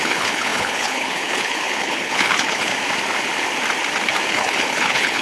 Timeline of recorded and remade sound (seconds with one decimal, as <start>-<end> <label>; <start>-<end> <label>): 0.0-2.7 remade; 2.7-4.3 recorded; 4.3-5.2 remade

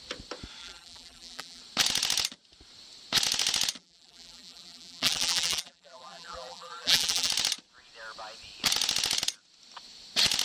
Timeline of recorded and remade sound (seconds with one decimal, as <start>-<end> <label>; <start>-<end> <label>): 0.0-0.6 recorded; 0.6-1.6 remade; 1.6-3.8 recorded; 3.8-7.3 remade; 7.3-10.4 recorded

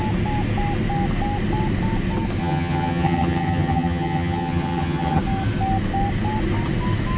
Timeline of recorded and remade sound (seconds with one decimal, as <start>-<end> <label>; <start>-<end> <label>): 0.0-2.4 recorded; 2.4-5.2 remade; 5.2-7.2 recorded

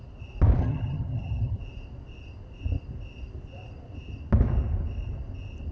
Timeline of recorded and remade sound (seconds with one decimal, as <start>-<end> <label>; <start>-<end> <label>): 0.0-0.6 recorded; 0.6-1.6 remade; 1.6-5.7 recorded

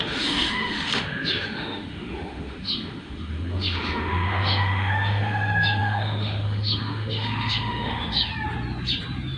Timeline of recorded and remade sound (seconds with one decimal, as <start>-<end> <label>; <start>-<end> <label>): 0.0-8.3 remade; 8.3-9.4 recorded

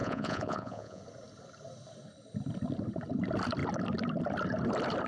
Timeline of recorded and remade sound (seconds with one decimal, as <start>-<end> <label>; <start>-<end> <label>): 0.0-1.0 remade; 1.0-5.1 recorded

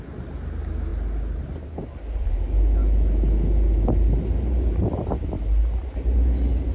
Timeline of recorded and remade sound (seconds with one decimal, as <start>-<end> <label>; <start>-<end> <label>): 0.0-6.7 recorded